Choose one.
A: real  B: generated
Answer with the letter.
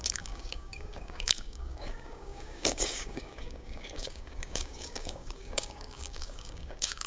B